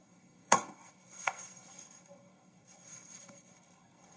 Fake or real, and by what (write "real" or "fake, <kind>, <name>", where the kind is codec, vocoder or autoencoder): fake, codec, SNAC